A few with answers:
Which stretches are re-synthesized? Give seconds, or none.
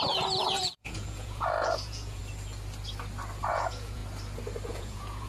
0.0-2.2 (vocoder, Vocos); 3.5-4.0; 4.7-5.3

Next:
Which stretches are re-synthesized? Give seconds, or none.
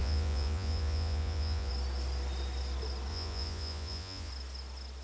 0.0-1.7 (vocoder, Vocos); 3.1-4.3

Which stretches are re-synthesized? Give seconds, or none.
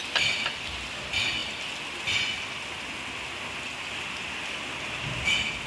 none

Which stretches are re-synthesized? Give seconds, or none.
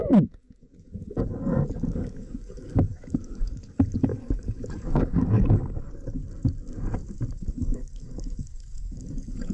0.0-6.2 (codec, DAC); 7.3-9.5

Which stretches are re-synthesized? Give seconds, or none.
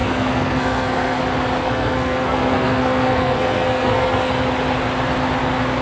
0.0-1.2 (codec, SNAC); 1.6-4.3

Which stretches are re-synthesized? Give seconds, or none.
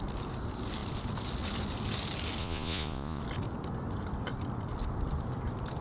2.4-3.2 (vocoder, Vocos)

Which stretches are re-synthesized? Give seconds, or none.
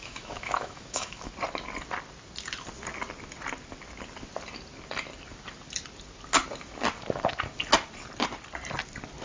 0.0-1.3 (autoencoder, DAC-VAE)